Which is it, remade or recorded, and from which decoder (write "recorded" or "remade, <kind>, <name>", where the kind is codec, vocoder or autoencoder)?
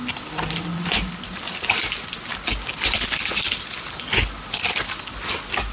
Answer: recorded